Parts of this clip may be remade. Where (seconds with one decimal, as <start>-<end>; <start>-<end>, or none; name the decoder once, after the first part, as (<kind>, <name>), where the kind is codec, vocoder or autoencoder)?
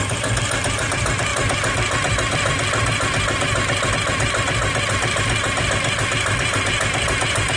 none